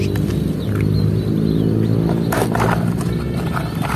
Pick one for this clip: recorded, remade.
recorded